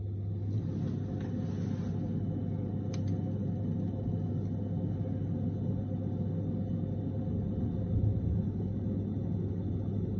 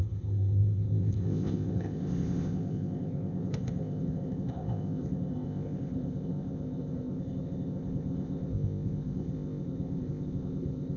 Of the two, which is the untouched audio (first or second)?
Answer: first